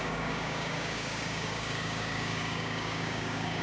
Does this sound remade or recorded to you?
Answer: remade